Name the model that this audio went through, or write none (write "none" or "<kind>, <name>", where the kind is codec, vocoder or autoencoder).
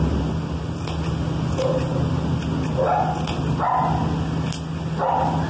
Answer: none